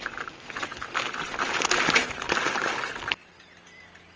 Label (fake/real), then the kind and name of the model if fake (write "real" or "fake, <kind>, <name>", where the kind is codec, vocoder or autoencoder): real